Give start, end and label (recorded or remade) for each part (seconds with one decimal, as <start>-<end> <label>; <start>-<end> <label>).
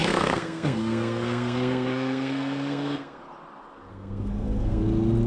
0.0-3.2 remade; 3.2-3.9 recorded; 3.9-4.8 remade; 4.8-5.3 recorded